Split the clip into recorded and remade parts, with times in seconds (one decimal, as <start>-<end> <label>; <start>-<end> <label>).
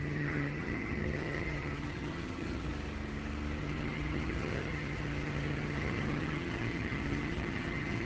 0.0-2.7 remade; 2.7-3.6 recorded; 3.6-8.1 remade